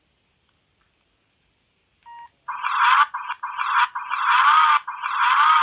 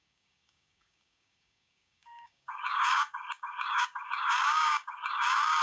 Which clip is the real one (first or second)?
first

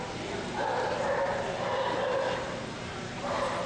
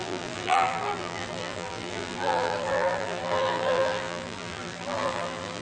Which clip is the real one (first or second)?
first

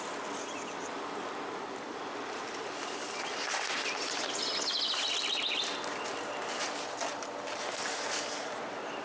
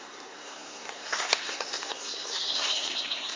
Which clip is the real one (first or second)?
first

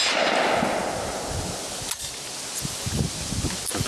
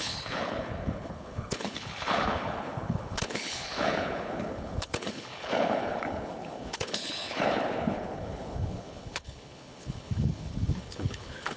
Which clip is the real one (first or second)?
first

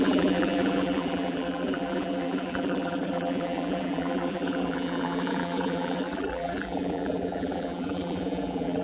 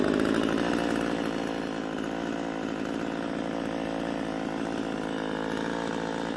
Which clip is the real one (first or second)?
second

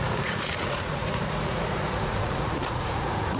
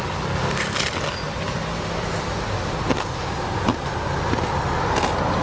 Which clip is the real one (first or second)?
second